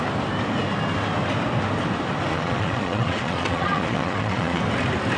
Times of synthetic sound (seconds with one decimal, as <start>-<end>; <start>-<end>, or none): 2.3-4.6